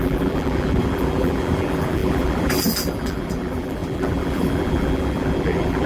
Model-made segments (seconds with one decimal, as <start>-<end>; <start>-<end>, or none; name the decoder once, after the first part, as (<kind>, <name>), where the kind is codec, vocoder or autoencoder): 0.0-5.9 (vocoder, BigVGAN v2)